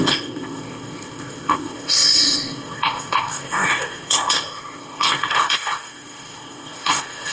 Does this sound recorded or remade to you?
remade